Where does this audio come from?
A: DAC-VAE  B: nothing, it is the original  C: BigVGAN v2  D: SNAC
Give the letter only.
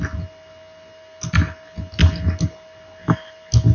B